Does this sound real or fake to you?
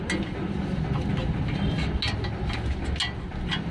real